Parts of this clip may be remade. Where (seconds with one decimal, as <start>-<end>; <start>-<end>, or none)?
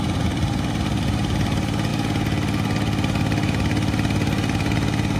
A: none